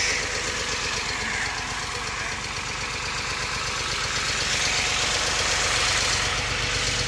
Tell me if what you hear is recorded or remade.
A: recorded